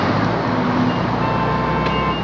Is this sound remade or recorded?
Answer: recorded